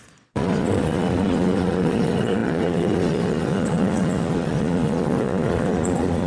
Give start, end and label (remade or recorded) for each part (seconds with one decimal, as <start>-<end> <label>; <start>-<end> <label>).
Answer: 0.0-6.3 remade